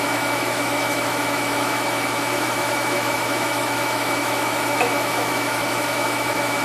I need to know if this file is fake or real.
fake